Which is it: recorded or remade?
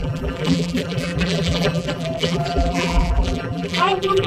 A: remade